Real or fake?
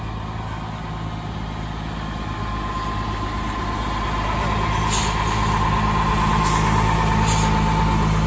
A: real